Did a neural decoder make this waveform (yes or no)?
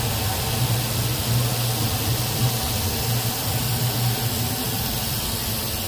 no